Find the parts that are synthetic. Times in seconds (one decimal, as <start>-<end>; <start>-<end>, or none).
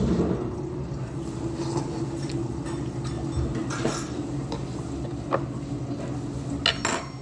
none